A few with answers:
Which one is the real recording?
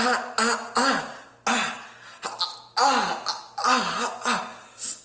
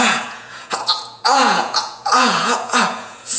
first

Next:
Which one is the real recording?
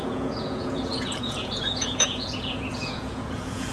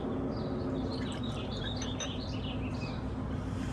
second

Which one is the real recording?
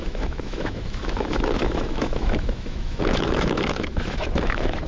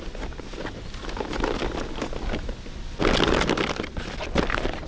second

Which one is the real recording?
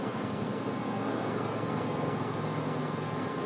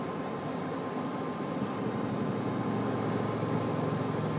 second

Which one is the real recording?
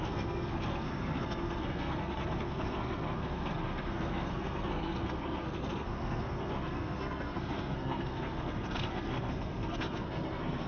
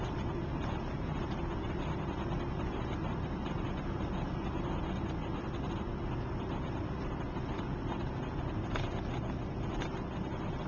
second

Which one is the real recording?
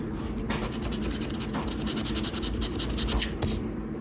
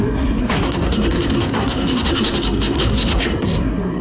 first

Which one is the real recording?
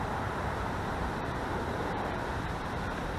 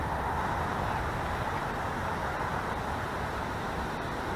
second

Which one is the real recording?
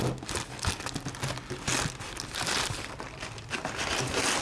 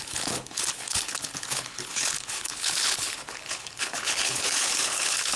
first